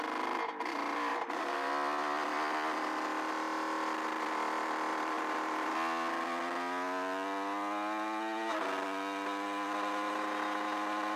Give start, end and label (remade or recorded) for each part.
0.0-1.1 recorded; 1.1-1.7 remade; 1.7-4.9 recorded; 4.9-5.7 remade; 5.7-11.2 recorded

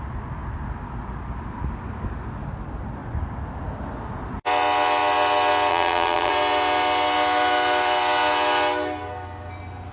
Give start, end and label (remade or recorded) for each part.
0.0-5.7 recorded; 5.7-6.3 remade; 6.3-9.9 recorded